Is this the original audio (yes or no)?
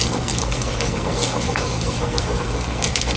no